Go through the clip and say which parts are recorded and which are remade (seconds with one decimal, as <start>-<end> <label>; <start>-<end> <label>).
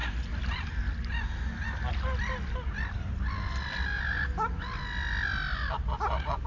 0.0-6.5 recorded